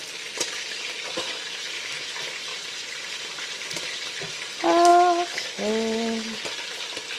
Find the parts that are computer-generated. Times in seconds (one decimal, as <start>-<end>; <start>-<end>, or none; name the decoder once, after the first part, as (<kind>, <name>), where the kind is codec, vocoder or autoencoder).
2.5-4.3 (vocoder, BigVGAN v2)